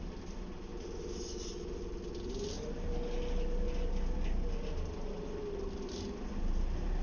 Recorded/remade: recorded